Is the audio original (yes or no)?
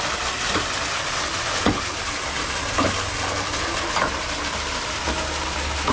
yes